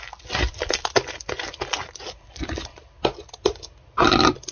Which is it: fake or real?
real